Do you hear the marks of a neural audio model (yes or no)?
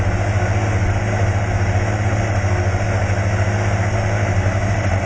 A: no